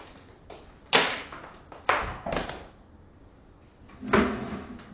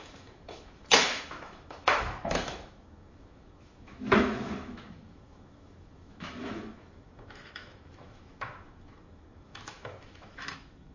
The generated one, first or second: second